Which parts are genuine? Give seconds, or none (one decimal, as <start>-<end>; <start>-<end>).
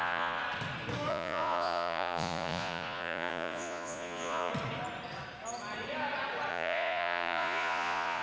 0.4-1.1; 4.5-6.5